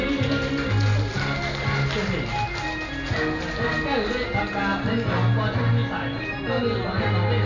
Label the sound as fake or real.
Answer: real